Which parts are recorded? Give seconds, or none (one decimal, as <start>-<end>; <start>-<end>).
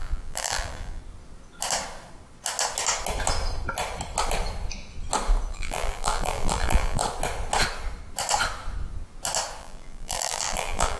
1.0-5.5; 7.0-9.6